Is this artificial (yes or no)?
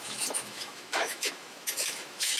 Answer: yes